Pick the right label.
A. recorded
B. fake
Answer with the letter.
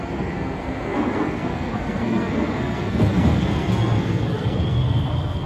B